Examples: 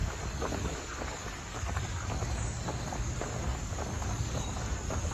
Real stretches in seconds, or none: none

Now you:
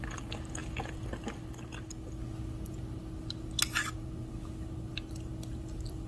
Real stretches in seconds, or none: 0.0-6.1

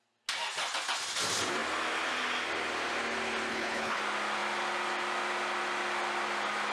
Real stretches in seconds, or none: 0.0-3.5; 4.0-6.7

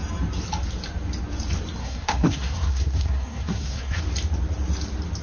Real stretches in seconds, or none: 0.0-1.8; 4.0-5.2